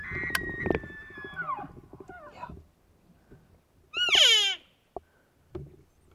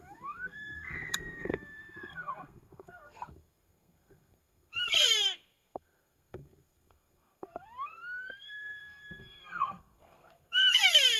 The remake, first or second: second